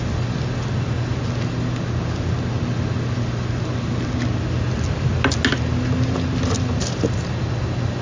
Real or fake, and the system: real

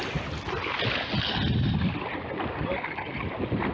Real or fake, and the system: real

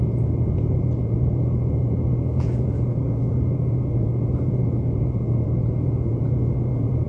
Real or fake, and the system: fake, vocoder, Vocos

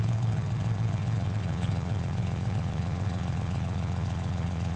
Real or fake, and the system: fake, vocoder, Vocos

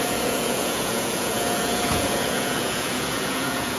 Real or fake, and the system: fake, vocoder, Vocos